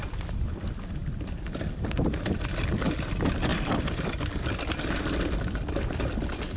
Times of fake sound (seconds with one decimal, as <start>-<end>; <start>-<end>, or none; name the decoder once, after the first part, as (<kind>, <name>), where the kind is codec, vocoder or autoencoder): none